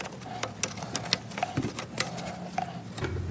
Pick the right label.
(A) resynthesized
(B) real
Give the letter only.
B